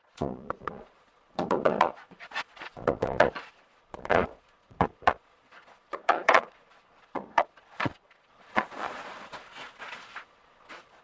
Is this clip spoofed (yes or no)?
yes